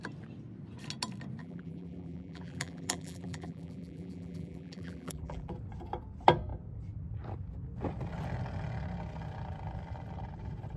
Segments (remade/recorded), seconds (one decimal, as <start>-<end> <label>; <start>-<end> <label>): 0.0-1.4 recorded; 1.4-5.5 remade; 5.5-10.8 recorded